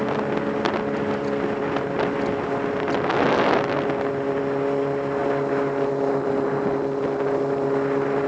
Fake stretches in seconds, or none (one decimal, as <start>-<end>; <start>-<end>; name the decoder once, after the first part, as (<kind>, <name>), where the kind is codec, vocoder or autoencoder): none